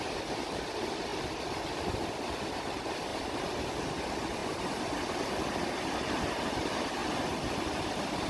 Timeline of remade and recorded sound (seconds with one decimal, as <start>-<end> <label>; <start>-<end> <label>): 0.0-8.3 recorded